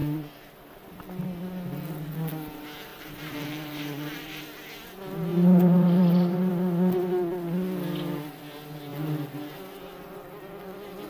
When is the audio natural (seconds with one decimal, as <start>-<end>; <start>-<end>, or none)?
0.0-2.9; 4.4-5.3; 6.5-11.1